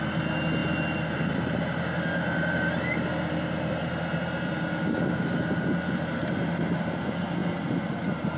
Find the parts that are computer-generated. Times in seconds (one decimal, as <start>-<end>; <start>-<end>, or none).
none

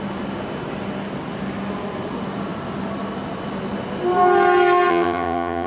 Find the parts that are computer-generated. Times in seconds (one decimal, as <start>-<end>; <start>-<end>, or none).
4.9-5.7

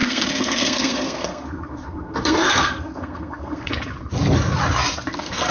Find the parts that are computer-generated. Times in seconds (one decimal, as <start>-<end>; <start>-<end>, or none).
0.0-3.7; 5.1-5.5

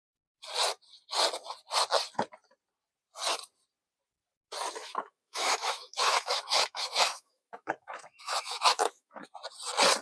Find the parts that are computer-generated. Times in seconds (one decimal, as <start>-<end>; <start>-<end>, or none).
4.8-9.3

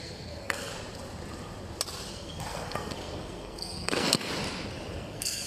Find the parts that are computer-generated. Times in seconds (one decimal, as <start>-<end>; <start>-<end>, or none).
0.0-0.7; 2.1-4.3; 4.9-5.5